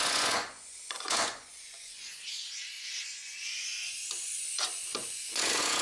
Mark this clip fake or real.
fake